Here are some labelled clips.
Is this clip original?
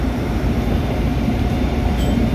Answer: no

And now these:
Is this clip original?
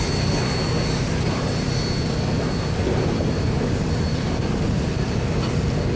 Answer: yes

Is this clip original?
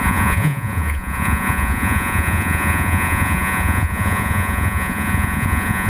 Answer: no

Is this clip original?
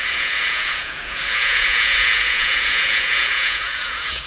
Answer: no